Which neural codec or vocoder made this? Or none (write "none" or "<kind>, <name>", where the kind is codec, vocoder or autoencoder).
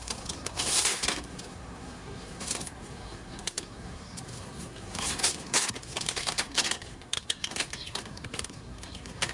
codec, SNAC